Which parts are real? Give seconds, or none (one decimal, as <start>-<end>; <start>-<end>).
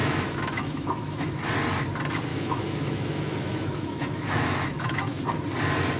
1.3-2.3; 5.2-6.0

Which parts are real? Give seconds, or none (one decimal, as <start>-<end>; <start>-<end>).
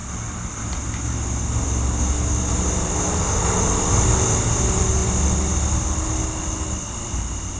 0.0-7.6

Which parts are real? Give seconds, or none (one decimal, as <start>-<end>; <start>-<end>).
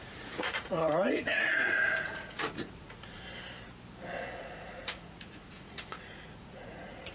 3.2-4.4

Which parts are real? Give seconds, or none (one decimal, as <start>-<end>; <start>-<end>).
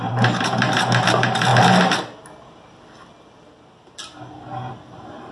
1.5-4.7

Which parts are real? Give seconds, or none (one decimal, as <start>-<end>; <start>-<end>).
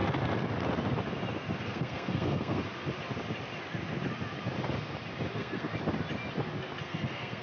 0.0-1.6; 2.6-5.3; 5.7-6.8